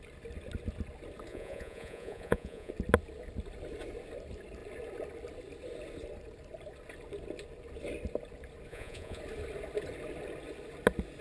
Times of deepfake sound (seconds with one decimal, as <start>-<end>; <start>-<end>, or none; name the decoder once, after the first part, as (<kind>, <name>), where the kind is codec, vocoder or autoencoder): 1.3-2.7 (vocoder, Vocos); 8.7-9.2